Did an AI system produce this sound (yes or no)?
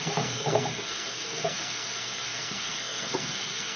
yes